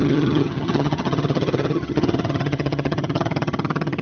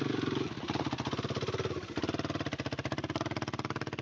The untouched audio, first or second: second